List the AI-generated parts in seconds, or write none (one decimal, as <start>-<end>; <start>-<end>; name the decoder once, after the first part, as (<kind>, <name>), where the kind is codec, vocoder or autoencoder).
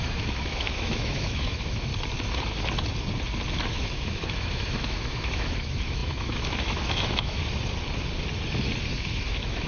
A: 0.0-1.9 (autoencoder, DAC-VAE); 3.7-7.4; 9.0-9.7